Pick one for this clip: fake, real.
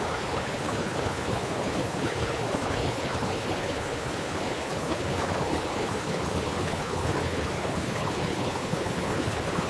fake